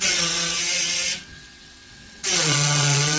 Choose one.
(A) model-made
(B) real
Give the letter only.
A